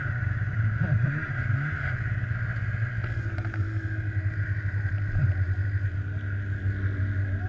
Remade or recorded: recorded